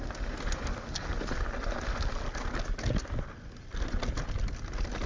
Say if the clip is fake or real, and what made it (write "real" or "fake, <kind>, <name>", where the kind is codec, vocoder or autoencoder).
real